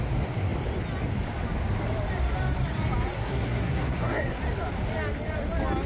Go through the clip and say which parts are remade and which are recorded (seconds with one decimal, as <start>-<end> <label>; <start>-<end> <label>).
0.0-3.2 recorded; 3.2-4.4 remade; 4.4-5.9 recorded